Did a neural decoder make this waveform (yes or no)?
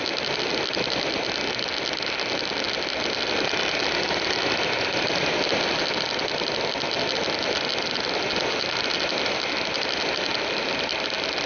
no